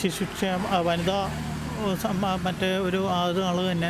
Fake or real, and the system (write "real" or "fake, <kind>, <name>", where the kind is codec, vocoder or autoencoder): real